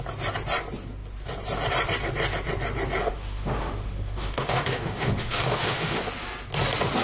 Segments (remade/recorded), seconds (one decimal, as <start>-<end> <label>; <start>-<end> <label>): 0.0-3.0 recorded; 3.0-6.0 remade; 6.0-7.0 recorded